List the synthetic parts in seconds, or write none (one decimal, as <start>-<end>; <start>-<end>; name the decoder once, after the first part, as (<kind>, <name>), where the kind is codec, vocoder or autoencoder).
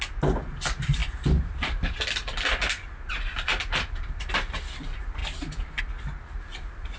5.2-5.8 (vocoder, BigVGAN v2)